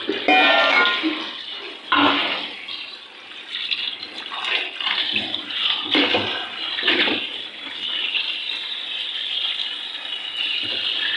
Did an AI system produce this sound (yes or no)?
no